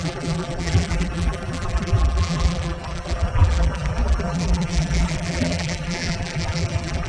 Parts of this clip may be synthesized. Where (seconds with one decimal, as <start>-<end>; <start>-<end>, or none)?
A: 0.0-7.1